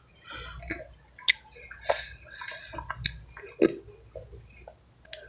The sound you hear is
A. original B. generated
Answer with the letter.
A